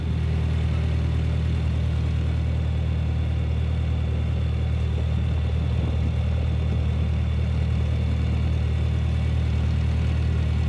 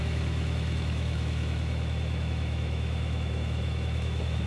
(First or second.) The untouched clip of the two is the first